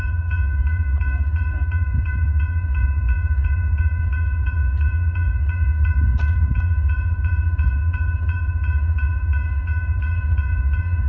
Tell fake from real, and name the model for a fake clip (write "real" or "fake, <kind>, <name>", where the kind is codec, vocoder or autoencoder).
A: fake, vocoder, Vocos